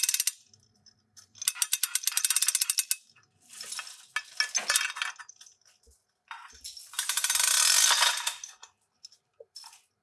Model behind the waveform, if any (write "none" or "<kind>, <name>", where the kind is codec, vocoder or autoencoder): none